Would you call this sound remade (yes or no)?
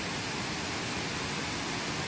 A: no